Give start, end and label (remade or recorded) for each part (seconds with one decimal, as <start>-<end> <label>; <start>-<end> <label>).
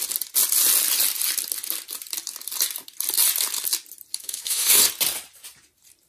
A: 0.0-4.2 recorded; 4.2-4.8 remade; 4.8-6.1 recorded